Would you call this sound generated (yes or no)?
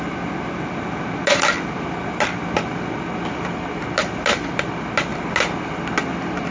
no